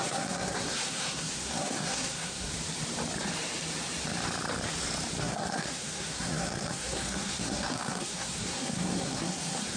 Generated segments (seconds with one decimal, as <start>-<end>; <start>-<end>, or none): 0.0-2.5; 5.2-9.8